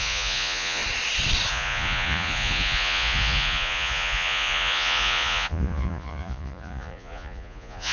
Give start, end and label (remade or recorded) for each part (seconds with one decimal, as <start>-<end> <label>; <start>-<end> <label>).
0.0-0.8 remade; 0.8-1.5 recorded; 1.5-7.9 remade